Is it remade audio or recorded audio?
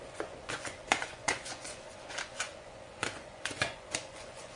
remade